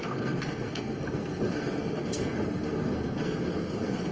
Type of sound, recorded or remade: remade